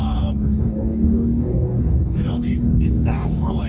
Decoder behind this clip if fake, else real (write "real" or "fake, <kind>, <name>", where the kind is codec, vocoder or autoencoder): fake, codec, DAC